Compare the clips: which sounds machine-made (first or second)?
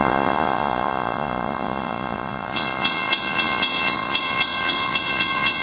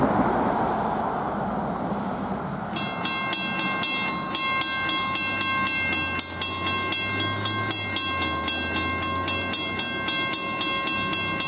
first